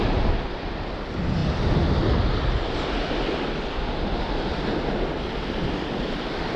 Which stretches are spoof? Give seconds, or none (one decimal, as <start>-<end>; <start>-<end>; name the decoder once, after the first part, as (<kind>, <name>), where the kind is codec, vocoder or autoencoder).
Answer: none